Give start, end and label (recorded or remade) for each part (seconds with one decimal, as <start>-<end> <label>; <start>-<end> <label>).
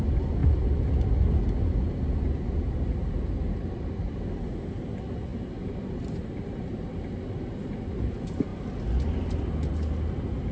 0.0-5.3 recorded; 5.3-6.6 remade; 6.6-10.5 recorded